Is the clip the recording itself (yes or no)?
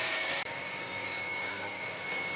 no